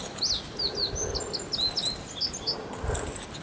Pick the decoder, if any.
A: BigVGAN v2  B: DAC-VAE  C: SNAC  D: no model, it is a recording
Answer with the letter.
D